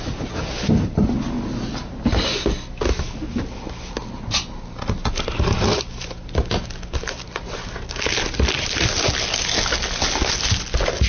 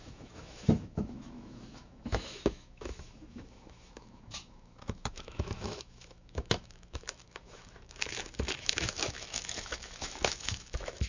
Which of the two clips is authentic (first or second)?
first